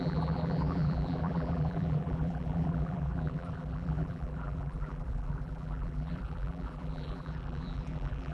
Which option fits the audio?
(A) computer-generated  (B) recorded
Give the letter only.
A